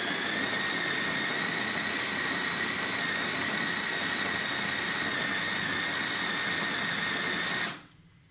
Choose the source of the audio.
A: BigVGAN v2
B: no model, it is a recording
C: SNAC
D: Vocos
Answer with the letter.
B